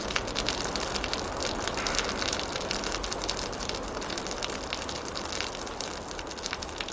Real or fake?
real